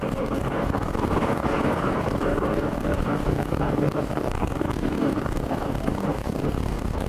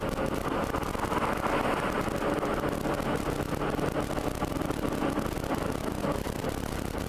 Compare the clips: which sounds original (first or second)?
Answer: second